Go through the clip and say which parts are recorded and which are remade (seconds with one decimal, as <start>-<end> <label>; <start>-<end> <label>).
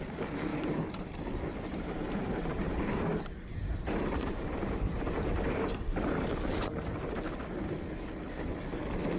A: 0.0-0.5 recorded; 0.5-1.1 remade; 1.1-1.7 recorded; 1.7-6.1 remade; 6.1-9.2 recorded